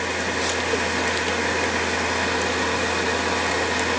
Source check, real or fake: real